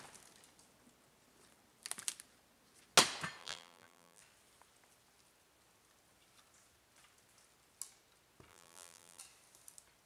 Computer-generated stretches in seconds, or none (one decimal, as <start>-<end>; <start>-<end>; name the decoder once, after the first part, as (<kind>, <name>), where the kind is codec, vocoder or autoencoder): 3.4-4.2 (vocoder, BigVGAN v2); 8.5-9.2